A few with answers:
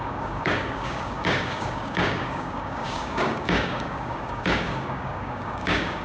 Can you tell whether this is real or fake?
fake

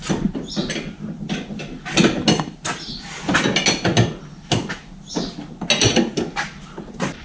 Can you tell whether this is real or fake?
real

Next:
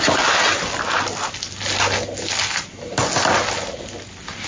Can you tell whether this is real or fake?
real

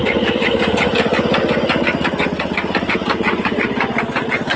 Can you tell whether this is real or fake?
real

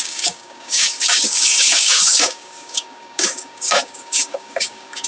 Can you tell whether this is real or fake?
fake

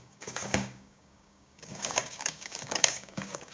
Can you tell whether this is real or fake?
fake